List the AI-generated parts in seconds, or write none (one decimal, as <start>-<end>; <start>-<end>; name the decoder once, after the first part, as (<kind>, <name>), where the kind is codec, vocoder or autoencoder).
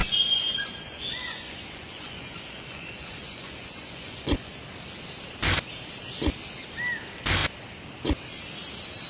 0.0-4.6 (vocoder, Vocos)